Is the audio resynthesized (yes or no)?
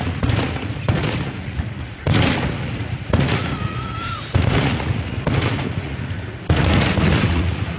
yes